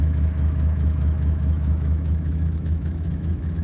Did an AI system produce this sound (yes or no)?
yes